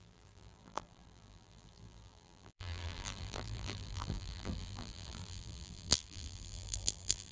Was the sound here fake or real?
fake